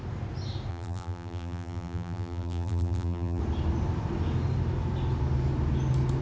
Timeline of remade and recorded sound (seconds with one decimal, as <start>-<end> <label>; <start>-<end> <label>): 0.0-0.7 recorded; 0.7-3.4 remade; 3.4-6.2 recorded